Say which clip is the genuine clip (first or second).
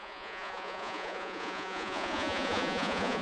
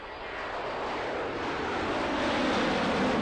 second